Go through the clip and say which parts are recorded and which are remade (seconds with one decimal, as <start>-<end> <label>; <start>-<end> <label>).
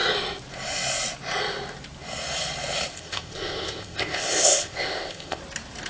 0.0-2.9 recorded; 2.9-5.4 remade; 5.4-5.9 recorded